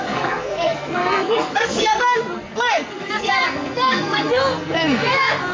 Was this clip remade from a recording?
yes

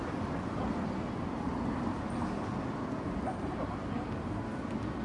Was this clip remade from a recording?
no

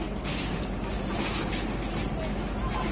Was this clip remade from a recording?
no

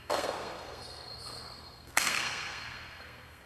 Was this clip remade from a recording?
yes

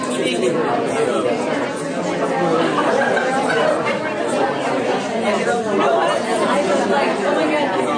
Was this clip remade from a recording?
no